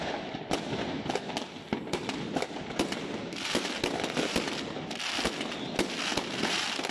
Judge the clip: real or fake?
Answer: real